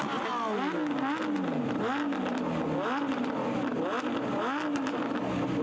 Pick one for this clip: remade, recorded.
recorded